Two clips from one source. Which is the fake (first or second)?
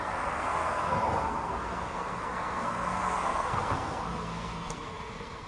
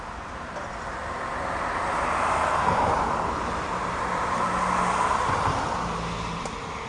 first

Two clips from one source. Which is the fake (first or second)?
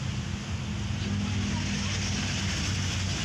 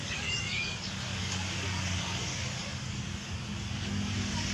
second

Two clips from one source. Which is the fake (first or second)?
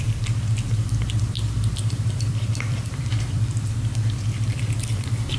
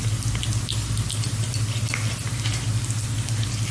first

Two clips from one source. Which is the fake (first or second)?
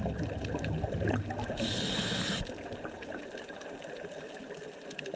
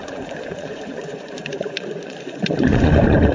second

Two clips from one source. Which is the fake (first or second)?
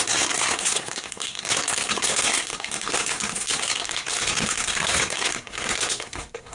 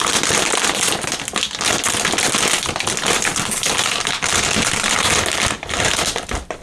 first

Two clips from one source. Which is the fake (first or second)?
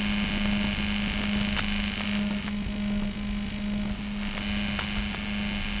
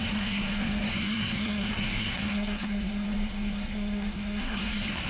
second